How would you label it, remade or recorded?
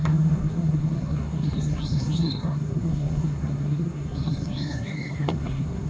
remade